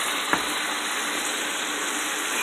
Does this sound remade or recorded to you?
recorded